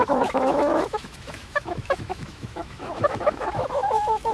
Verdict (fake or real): fake